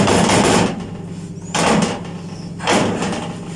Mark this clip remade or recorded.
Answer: recorded